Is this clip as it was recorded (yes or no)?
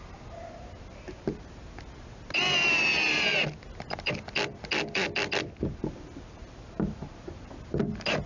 yes